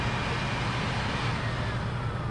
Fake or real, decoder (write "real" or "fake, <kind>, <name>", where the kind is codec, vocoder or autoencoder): real